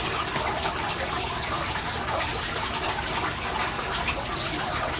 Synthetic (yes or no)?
no